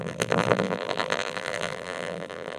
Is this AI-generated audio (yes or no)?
yes